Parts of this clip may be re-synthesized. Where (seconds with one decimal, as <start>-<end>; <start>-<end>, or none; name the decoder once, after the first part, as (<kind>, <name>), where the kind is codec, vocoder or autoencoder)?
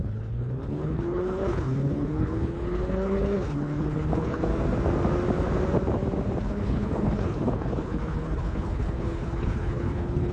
0.0-4.5 (codec, HILCodec); 6.4-10.3